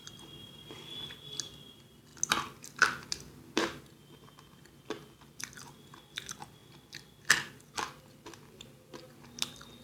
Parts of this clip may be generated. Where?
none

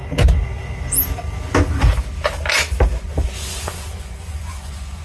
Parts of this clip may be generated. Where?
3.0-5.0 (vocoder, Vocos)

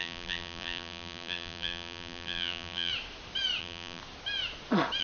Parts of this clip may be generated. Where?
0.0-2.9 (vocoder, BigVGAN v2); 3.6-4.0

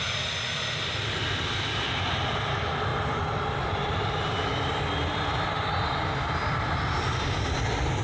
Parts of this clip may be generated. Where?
0.0-8.0 (vocoder, BigVGAN v2)

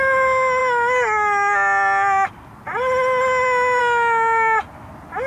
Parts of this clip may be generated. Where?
none